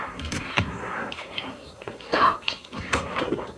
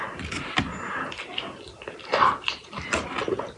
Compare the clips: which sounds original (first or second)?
second